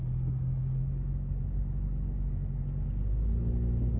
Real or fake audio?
real